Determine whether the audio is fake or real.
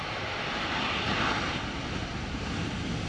real